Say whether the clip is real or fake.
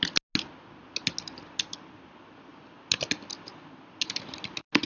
real